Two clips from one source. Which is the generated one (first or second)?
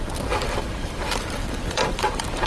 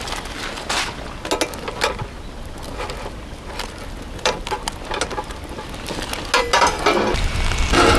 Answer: first